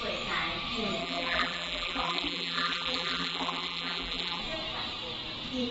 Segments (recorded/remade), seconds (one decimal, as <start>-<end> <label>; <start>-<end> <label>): 0.0-1.0 recorded; 1.0-4.4 remade; 4.4-5.7 recorded